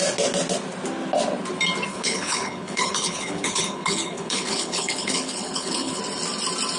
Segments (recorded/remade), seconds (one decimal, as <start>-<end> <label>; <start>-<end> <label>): 0.0-1.9 recorded; 1.9-6.0 remade; 6.0-6.8 recorded

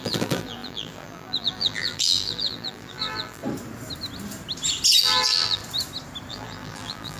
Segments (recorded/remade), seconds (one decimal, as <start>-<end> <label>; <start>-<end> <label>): 0.0-3.4 remade; 3.4-5.0 recorded; 5.0-5.6 remade; 5.6-6.3 recorded; 6.3-7.2 remade

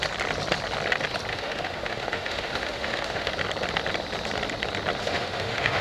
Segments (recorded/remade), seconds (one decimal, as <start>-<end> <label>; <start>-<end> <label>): 0.0-1.3 recorded; 1.3-3.3 remade; 3.3-5.0 recorded; 5.0-5.8 remade

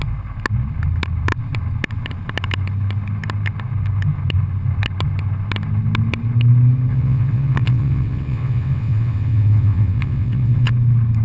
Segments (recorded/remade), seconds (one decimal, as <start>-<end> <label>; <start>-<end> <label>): 0.0-6.9 recorded; 6.9-10.7 remade; 10.7-11.2 recorded

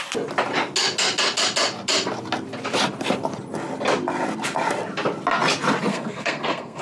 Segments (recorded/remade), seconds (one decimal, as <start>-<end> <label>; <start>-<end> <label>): 0.0-5.9 recorded; 5.9-6.8 remade